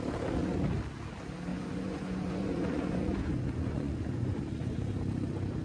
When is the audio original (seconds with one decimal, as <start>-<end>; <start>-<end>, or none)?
0.0-1.5; 4.8-5.6